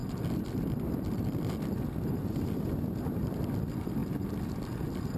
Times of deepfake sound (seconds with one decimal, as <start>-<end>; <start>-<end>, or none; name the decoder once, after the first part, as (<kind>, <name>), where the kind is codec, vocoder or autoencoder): none